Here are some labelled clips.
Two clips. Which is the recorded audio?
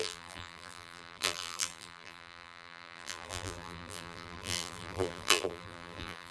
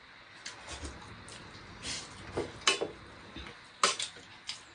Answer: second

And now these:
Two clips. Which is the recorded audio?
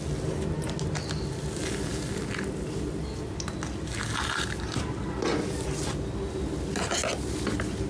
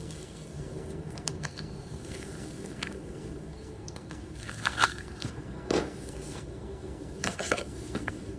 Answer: first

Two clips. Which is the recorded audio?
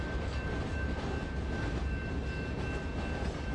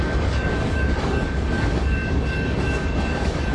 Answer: first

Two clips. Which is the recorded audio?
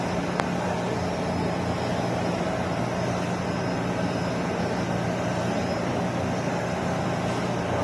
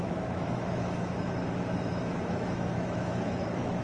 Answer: first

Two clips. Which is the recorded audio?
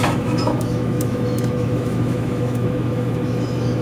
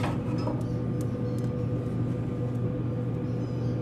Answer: second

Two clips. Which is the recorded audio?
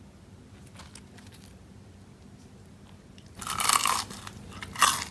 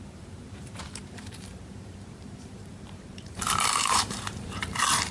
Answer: first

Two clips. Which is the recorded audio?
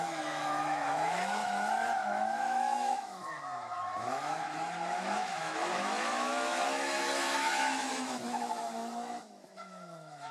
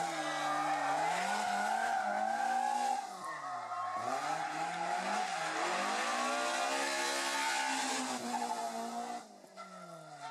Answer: second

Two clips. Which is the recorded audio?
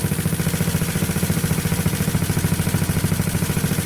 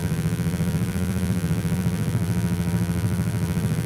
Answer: first